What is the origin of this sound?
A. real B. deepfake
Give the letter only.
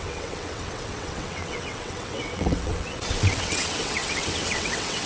B